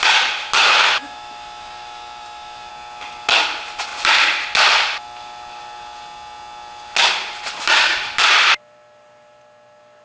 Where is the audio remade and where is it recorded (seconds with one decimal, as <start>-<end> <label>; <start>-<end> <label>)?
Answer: 0.0-0.6 recorded; 0.6-2.7 remade; 2.7-10.0 recorded